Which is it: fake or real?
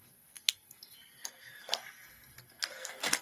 fake